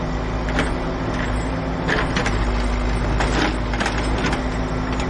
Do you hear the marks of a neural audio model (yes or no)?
no